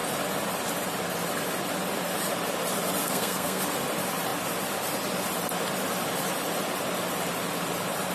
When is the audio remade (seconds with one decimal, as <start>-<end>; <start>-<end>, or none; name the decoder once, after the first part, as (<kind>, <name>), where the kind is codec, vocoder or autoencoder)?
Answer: 3.0-3.6 (codec, SNAC)